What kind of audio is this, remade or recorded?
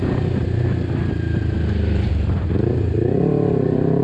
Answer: remade